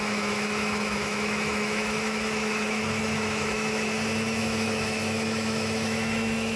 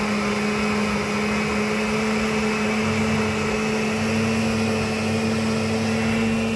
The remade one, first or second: first